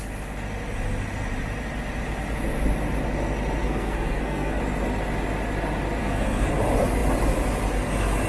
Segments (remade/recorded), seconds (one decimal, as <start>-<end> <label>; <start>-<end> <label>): 0.0-3.6 recorded; 3.6-4.6 remade; 4.6-6.0 recorded; 6.0-6.5 remade; 6.5-8.3 recorded